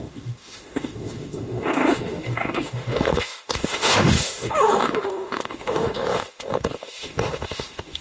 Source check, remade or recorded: remade